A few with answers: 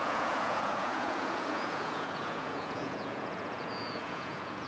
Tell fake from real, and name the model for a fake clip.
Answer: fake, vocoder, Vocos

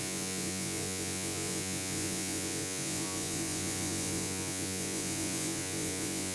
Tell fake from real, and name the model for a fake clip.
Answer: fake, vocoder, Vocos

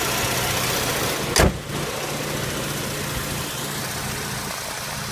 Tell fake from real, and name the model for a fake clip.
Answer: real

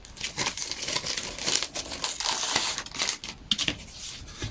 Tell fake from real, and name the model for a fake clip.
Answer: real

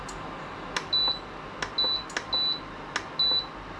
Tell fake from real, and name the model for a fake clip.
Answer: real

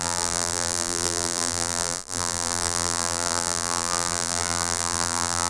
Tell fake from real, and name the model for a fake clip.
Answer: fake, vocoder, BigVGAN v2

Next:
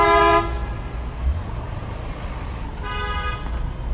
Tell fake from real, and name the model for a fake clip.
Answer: real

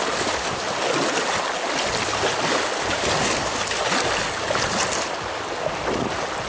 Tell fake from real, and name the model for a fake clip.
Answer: real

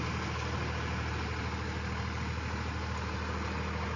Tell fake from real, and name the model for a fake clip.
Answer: real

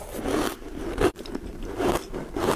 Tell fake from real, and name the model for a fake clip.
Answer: real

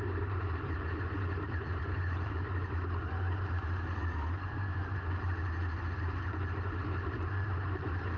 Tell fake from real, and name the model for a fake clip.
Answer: fake, vocoder, BigVGAN v2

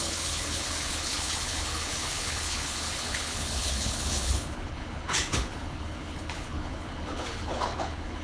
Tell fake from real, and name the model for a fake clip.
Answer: fake, codec, HILCodec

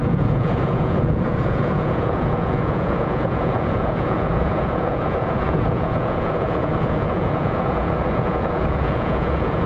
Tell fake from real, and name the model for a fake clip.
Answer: fake, vocoder, Vocos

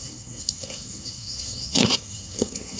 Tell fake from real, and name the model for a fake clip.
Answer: fake, codec, SNAC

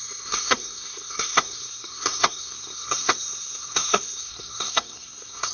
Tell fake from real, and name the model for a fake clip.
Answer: fake, codec, SNAC